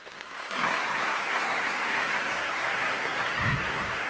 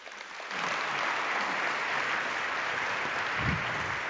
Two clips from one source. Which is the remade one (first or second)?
first